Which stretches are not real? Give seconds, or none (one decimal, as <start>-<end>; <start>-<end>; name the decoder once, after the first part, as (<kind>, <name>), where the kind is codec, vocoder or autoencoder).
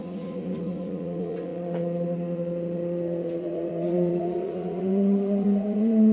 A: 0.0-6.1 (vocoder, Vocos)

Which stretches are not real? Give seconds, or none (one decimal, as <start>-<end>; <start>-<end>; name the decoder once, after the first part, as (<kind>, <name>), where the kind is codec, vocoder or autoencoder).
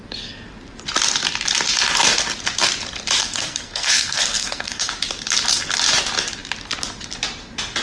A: 3.2-4.9 (codec, SNAC)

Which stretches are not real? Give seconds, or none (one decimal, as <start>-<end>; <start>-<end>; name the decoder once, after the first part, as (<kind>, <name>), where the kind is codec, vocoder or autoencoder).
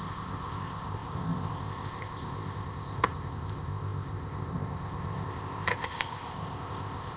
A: 0.0-7.2 (codec, ZipCodec)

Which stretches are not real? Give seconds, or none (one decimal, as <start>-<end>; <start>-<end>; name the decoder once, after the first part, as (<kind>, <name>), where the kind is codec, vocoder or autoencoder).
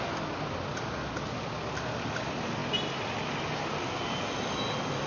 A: none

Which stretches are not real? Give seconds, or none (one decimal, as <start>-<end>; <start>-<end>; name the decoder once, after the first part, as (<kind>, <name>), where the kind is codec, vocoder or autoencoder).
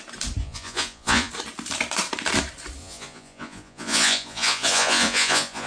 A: 0.4-1.3 (vocoder, Vocos); 2.8-5.7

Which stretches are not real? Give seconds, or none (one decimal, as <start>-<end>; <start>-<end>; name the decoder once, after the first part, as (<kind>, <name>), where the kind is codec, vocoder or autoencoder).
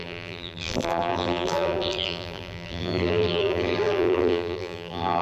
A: 0.0-5.2 (vocoder, BigVGAN v2)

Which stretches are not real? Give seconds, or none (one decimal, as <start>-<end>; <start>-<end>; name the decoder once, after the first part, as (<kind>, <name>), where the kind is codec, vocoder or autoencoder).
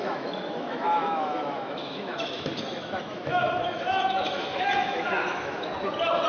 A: 0.0-5.7 (autoencoder, DAC-VAE)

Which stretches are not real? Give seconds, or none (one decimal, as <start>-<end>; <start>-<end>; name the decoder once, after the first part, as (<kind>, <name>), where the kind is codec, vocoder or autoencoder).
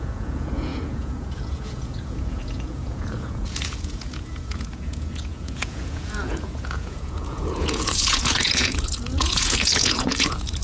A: 0.0-10.6 (vocoder, Vocos)